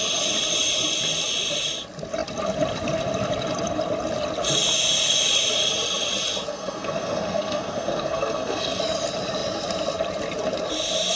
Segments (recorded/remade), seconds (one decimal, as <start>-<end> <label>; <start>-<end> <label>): 0.0-6.5 recorded; 6.5-8.8 remade; 8.8-11.2 recorded